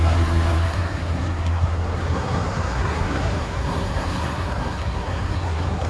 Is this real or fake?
fake